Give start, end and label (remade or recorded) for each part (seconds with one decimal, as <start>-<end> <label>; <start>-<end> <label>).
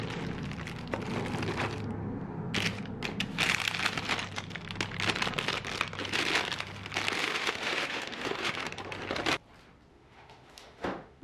0.0-7.2 recorded; 7.2-8.7 remade; 8.7-9.9 recorded; 9.9-11.2 remade